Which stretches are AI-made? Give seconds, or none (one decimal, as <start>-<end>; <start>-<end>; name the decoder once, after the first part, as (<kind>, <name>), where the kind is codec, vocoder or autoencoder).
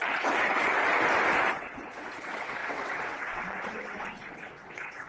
0.0-0.8 (vocoder, WaveNeXt); 1.5-5.1